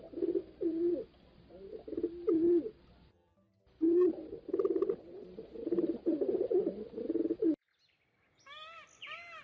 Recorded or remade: recorded